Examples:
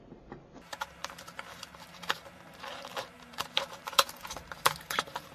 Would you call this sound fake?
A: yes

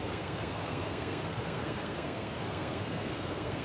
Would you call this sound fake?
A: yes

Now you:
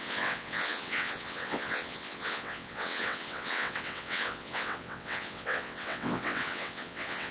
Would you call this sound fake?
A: yes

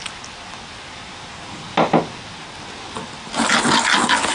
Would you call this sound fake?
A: no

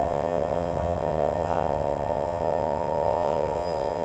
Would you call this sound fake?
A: yes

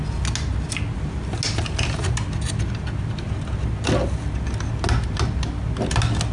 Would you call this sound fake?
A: no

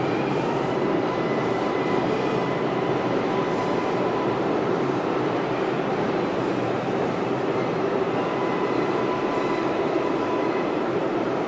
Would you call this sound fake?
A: yes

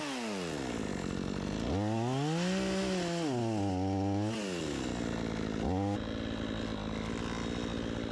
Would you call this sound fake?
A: no